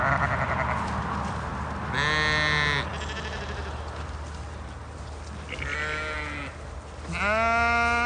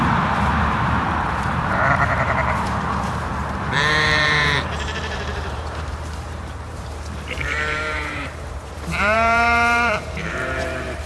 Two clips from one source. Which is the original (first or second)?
first